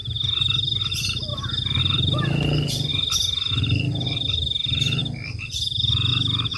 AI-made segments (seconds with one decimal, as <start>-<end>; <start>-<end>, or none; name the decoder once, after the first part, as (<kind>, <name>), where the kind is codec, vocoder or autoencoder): 1.3-1.8 (vocoder, BigVGAN v2)